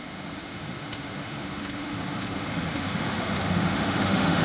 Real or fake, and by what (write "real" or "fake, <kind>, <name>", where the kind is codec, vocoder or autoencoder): fake, autoencoder, DAC-VAE